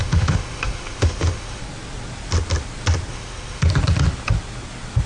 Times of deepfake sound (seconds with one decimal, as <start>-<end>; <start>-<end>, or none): 0.0-1.6; 3.1-3.6